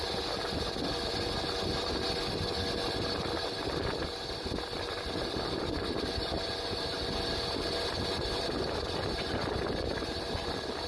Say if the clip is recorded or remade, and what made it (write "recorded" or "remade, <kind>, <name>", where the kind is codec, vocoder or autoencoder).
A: recorded